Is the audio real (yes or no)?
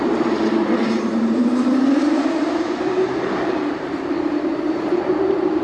no